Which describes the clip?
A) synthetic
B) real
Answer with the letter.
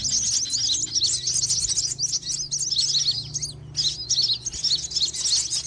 B